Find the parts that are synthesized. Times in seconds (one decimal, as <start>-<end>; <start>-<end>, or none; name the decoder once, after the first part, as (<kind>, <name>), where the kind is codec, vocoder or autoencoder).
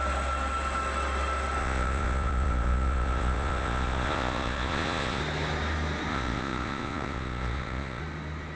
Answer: 1.6-5.2 (vocoder, Vocos); 6.1-8.0